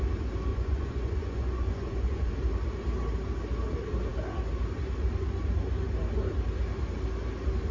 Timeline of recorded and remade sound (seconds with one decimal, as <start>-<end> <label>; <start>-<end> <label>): 0.0-0.5 recorded; 0.5-2.3 remade; 2.3-7.7 recorded